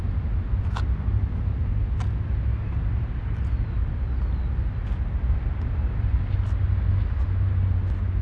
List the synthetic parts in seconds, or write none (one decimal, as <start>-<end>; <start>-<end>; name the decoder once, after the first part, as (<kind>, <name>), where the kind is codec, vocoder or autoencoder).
none